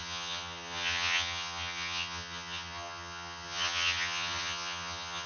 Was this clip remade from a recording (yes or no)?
yes